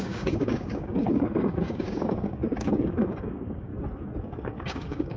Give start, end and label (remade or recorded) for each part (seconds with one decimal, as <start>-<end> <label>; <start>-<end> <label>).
0.0-3.7 remade; 3.7-4.2 recorded; 4.2-5.2 remade